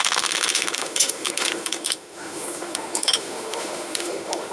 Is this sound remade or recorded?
remade